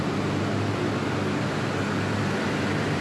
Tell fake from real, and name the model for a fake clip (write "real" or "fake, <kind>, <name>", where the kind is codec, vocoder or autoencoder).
real